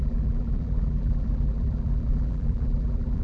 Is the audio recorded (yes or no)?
no